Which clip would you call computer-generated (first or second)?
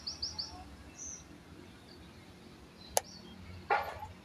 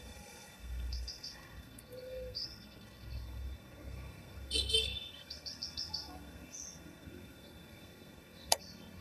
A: second